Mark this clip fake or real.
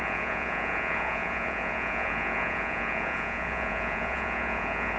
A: fake